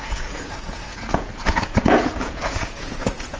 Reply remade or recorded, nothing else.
remade